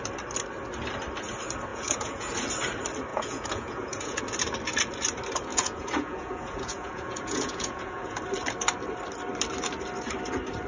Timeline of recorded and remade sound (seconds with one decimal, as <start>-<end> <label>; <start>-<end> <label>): 0.0-1.7 recorded; 1.7-2.3 remade; 2.3-3.1 recorded; 3.1-4.2 remade; 4.2-5.5 recorded; 5.5-8.2 remade; 8.2-10.7 recorded